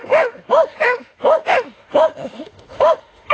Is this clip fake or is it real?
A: fake